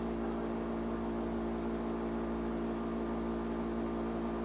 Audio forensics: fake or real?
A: real